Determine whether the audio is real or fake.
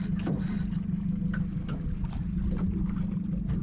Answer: real